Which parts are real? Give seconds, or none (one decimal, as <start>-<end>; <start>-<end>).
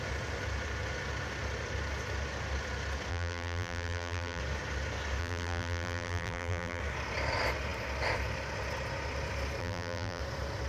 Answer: 0.0-3.1; 4.4-5.2; 6.8-9.6; 10.2-10.7